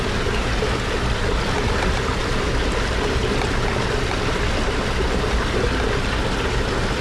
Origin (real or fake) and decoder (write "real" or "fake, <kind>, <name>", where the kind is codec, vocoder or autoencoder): real